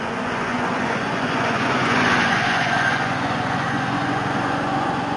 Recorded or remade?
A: remade